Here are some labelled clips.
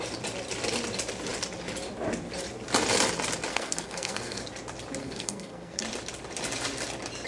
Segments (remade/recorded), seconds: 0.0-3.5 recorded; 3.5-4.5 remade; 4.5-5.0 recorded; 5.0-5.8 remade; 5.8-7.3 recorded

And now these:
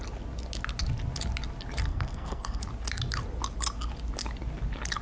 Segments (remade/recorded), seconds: 0.0-1.9 recorded; 1.9-2.6 remade; 2.6-5.0 recorded

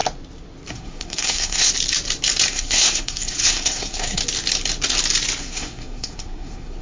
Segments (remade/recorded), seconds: 0.0-0.7 recorded; 0.7-1.7 remade; 1.7-2.5 recorded; 2.5-4.2 remade; 4.2-5.4 recorded; 5.4-6.8 remade